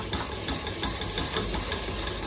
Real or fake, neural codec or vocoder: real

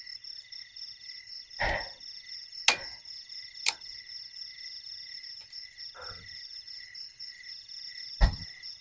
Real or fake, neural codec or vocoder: real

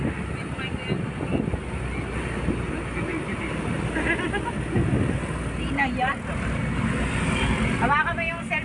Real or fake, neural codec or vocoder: real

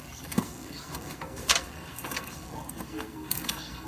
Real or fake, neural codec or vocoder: fake, codec, SNAC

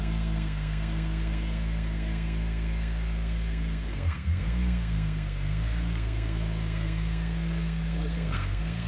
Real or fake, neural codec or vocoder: fake, codec, SNAC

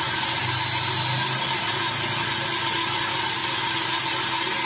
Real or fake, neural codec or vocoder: real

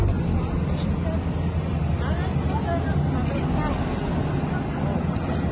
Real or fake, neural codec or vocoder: real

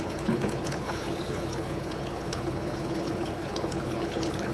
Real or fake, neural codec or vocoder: fake, codec, HILCodec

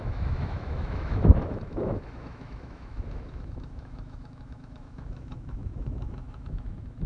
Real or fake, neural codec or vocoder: fake, autoencoder, DAC-VAE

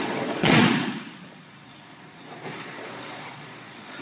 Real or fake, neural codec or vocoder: fake, vocoder, Vocos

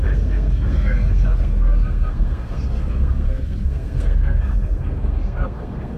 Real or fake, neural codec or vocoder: fake, codec, SNAC